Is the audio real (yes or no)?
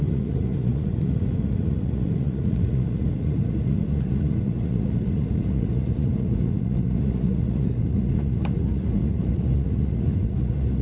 no